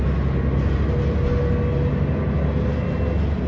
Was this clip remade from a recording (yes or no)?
no